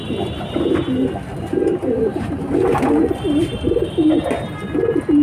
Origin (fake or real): real